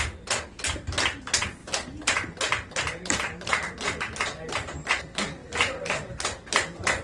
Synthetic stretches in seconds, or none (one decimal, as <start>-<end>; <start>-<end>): 1.6-5.0; 5.4-6.5